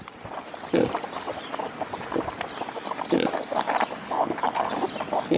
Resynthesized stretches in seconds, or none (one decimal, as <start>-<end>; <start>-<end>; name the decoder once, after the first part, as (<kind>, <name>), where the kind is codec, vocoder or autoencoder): 4.0-4.7 (codec, HILCodec)